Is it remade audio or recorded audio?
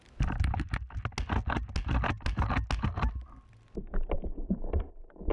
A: recorded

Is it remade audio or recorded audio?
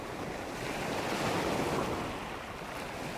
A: recorded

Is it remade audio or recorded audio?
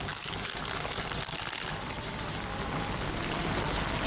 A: recorded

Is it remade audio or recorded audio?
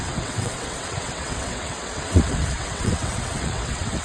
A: remade